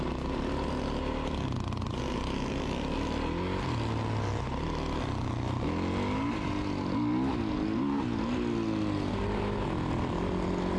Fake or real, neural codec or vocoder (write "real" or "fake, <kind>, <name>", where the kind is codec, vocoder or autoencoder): real